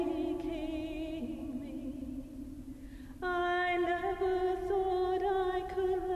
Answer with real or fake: real